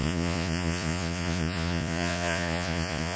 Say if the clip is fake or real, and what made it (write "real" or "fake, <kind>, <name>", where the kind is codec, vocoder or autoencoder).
fake, vocoder, Vocos